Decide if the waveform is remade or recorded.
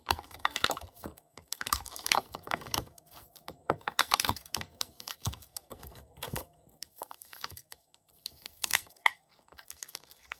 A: remade